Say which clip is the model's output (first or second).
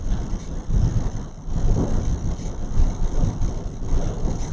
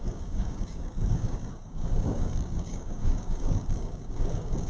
second